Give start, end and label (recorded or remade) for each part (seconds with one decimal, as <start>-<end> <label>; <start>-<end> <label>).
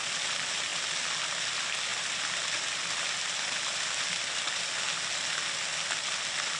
0.0-6.6 recorded